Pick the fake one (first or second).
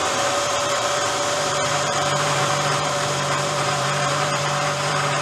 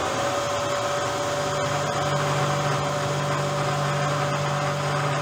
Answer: first